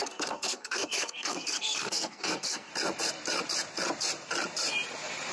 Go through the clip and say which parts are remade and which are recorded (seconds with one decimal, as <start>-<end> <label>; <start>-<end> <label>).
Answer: 0.0-2.7 remade; 2.7-5.3 recorded